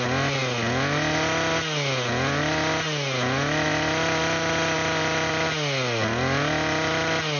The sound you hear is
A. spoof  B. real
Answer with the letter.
B